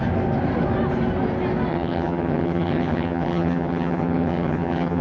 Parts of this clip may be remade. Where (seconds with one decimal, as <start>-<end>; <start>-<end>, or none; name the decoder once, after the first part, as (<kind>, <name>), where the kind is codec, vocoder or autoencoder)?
1.7-5.0 (vocoder, HiFi-GAN)